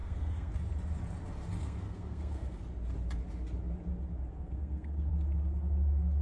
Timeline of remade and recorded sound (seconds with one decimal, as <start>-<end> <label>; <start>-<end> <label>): 0.0-0.5 remade; 0.5-1.6 recorded; 1.6-2.6 remade; 2.6-4.3 recorded; 4.3-5.1 remade; 5.1-6.2 recorded